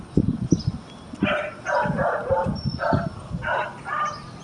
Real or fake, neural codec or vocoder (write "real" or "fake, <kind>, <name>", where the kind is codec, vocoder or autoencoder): real